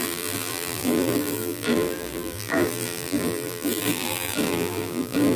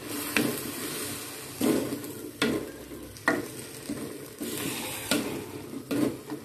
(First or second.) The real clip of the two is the second